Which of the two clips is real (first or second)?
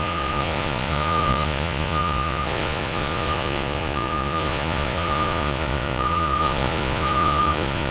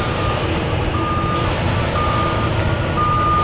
second